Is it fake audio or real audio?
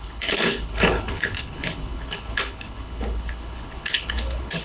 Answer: fake